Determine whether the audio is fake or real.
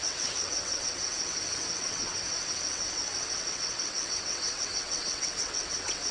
fake